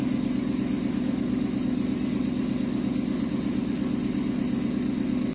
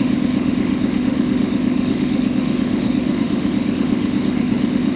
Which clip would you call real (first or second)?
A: first